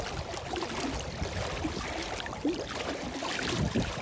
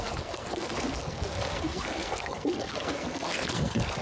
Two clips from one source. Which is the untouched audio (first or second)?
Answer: first